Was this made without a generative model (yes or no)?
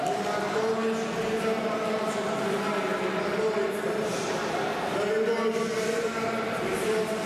yes